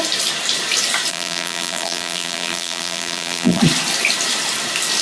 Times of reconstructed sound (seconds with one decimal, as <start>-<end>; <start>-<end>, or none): 1.1-3.6